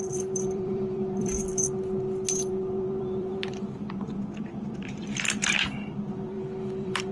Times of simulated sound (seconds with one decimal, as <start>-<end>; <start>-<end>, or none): 0.0-1.5; 2.5-7.1